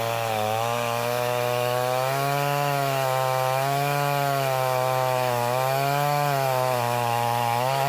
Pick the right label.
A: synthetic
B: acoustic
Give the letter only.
A